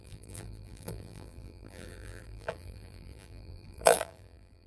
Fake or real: fake